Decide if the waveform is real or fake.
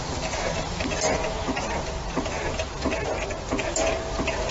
real